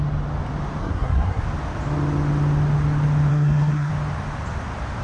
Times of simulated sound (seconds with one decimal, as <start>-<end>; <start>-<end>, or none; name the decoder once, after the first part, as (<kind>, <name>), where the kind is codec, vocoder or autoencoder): 0.8-1.4 (codec, SNAC); 3.3-3.9